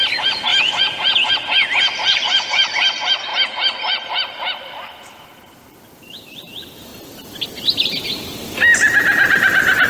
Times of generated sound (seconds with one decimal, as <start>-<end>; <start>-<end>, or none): 2.0-2.9; 3.3-6.4